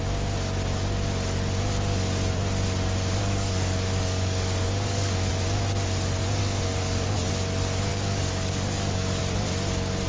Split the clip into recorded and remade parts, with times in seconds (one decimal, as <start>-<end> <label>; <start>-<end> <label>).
0.0-3.2 recorded; 3.2-5.3 remade; 5.3-6.4 recorded; 6.4-7.3 remade; 7.3-7.9 recorded; 7.9-9.2 remade; 9.2-10.1 recorded